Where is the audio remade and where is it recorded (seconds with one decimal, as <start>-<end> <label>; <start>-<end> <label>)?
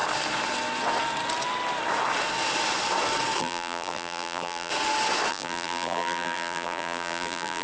0.0-3.4 recorded; 3.4-4.7 remade; 4.7-5.3 recorded; 5.3-7.6 remade